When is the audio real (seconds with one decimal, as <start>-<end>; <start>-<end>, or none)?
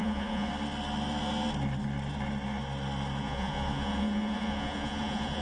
0.5-3.2